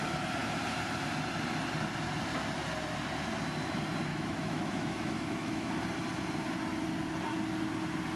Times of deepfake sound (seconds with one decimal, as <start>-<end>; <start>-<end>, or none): 4.1-5.7